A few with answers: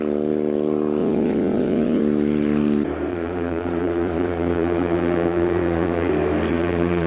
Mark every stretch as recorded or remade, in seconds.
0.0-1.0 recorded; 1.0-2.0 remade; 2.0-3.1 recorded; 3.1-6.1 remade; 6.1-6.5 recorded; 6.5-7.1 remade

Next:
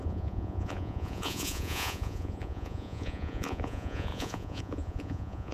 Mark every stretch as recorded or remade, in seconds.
0.0-5.5 remade

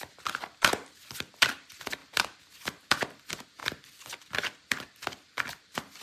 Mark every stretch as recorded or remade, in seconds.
0.0-6.0 recorded

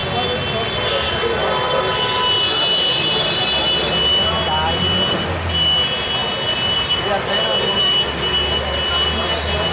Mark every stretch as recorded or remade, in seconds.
0.0-9.7 recorded

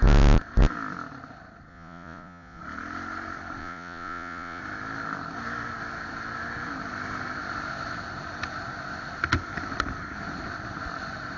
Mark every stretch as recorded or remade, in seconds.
0.0-1.7 recorded; 1.7-2.6 remade; 2.6-3.6 recorded; 3.6-4.6 remade; 4.6-11.4 recorded

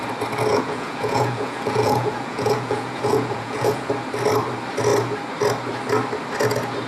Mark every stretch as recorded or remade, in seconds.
0.0-0.5 recorded; 0.5-3.9 remade; 3.9-6.9 recorded

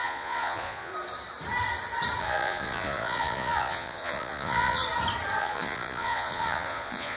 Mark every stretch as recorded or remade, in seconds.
0.0-0.9 remade; 0.9-2.2 recorded; 2.2-4.8 remade; 4.8-5.4 recorded; 5.4-7.2 remade

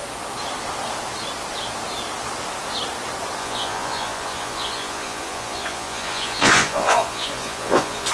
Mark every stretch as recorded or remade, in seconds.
0.0-3.4 recorded; 3.4-8.1 remade